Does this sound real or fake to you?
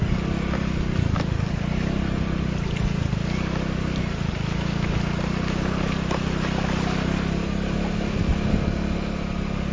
real